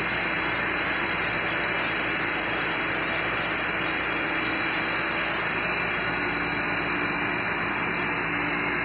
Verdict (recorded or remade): recorded